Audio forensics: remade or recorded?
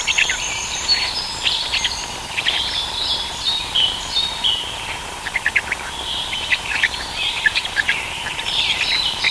remade